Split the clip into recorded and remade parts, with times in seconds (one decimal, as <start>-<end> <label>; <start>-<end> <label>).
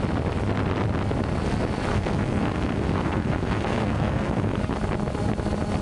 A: 0.0-1.9 recorded; 1.9-4.6 remade; 4.6-5.8 recorded